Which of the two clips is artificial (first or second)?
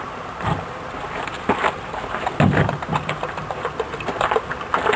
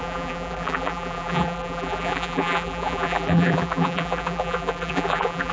second